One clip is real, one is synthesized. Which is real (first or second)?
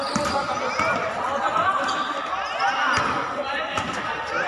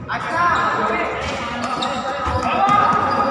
second